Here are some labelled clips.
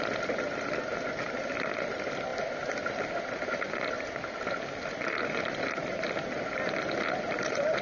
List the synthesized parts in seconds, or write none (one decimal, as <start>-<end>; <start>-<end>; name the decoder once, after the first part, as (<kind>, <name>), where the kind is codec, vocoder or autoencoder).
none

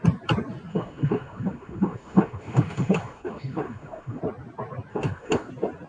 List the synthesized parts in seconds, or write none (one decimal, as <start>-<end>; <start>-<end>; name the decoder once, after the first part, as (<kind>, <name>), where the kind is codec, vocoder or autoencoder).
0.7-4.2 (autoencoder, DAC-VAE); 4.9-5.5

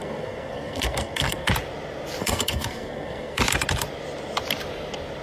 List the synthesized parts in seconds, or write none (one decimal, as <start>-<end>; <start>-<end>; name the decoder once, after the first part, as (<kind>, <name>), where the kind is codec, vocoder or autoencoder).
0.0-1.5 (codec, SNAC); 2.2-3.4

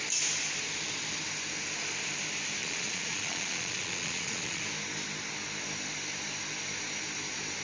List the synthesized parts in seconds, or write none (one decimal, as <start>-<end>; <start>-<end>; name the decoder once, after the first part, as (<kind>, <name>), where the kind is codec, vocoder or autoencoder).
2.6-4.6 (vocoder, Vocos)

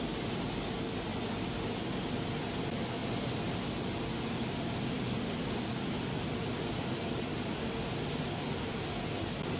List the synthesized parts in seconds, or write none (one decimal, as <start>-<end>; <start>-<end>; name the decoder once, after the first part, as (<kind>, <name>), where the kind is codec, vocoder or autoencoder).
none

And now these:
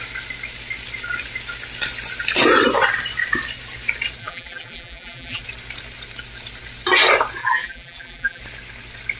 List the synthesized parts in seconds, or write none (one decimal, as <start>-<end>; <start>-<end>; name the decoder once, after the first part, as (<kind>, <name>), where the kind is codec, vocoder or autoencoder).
4.2-5.4 (vocoder, BigVGAN v2); 7.4-8.4

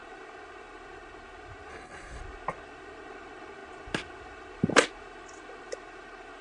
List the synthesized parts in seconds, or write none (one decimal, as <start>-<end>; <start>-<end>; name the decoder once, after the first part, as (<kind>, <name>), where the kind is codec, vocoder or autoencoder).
1.7-2.2 (codec, HILCodec)